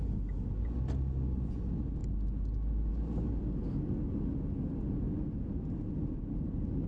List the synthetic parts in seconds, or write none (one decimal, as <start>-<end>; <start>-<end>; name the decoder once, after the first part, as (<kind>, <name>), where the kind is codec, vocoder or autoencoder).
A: none